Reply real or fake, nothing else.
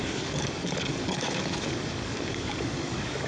fake